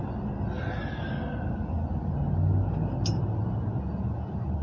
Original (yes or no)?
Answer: yes